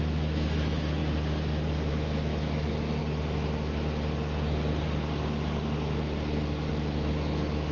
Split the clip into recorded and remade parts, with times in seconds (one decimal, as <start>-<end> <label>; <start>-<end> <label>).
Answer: 0.0-1.0 remade; 1.0-1.9 recorded; 1.9-3.0 remade; 3.0-6.7 recorded; 6.7-7.7 remade